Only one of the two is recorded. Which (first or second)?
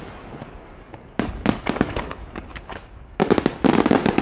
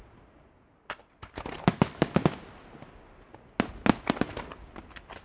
second